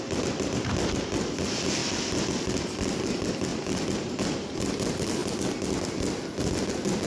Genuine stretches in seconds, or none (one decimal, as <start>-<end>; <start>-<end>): 0.0-7.1